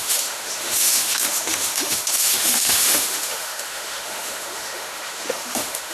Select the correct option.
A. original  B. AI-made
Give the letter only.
B